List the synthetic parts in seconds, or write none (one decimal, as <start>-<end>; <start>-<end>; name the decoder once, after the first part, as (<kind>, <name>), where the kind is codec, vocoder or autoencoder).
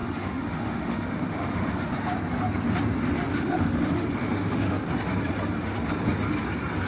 0.0-1.9 (autoencoder, DAC-VAE); 3.3-4.9